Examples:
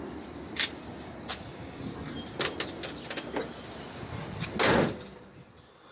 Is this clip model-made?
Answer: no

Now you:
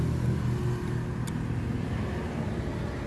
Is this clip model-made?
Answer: no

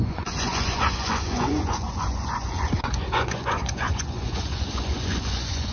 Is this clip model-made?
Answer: yes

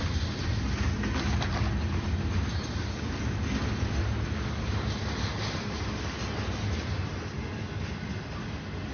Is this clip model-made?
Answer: no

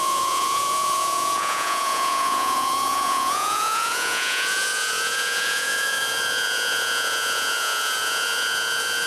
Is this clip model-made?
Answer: yes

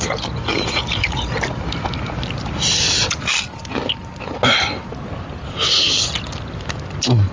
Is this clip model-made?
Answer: no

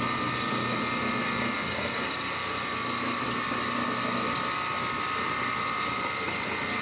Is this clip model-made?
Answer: no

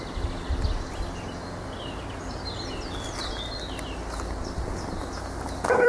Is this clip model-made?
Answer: no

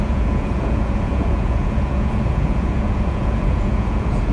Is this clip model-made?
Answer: yes